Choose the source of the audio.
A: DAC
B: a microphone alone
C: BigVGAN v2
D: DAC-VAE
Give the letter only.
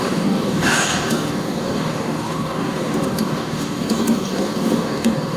A